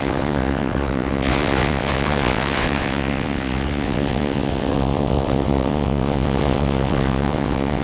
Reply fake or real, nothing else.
fake